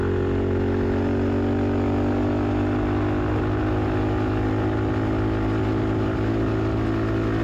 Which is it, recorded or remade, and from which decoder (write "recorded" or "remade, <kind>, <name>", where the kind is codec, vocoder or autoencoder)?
recorded